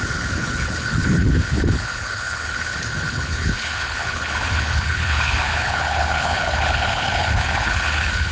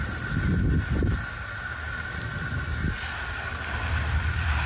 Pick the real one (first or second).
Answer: second